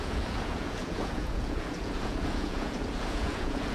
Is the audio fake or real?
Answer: fake